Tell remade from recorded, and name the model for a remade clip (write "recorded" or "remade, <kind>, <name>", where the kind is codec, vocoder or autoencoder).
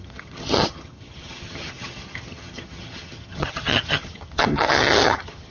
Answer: remade, vocoder, HiFi-GAN